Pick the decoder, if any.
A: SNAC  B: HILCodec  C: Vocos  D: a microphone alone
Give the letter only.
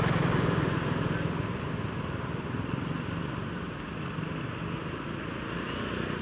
D